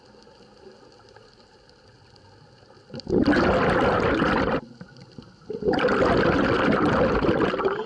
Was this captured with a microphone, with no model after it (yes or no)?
yes